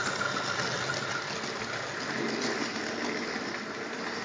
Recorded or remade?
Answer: recorded